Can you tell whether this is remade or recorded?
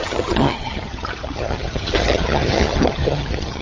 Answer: remade